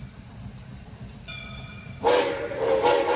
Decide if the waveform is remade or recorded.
recorded